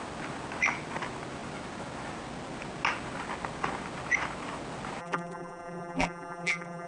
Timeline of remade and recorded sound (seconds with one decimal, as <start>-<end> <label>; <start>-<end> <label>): 0.0-5.0 recorded; 5.0-6.9 remade